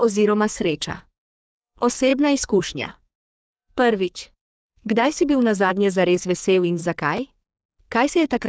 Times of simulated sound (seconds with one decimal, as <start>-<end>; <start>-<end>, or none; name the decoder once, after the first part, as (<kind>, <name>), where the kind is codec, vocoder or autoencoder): 0.0-6.8 (codec, SNAC); 8.1-8.5